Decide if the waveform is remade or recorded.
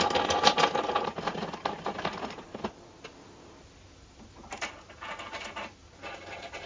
recorded